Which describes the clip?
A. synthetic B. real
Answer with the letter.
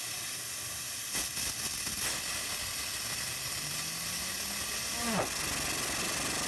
B